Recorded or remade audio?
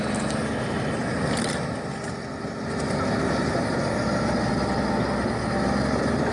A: recorded